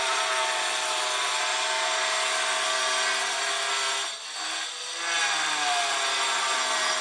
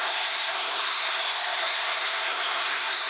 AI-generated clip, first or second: second